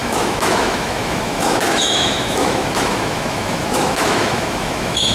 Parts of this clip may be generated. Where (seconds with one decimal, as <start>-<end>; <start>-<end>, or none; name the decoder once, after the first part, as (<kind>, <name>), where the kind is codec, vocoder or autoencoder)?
0.0-5.1 (autoencoder, DAC-VAE)